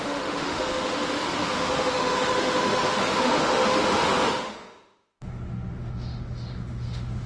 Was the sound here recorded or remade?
remade